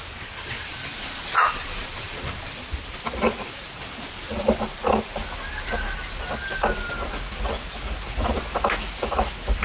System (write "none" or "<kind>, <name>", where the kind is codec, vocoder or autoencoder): none